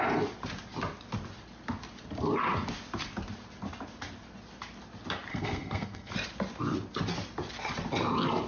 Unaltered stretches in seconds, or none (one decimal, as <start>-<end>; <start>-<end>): 0.0-5.3; 6.1-8.5